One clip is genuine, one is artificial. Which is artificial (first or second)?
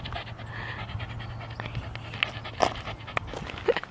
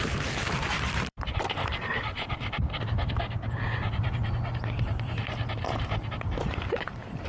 second